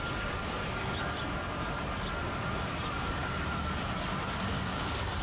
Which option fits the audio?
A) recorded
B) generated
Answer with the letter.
A